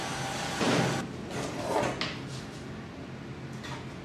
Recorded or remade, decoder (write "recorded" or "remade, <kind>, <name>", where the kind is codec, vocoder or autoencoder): recorded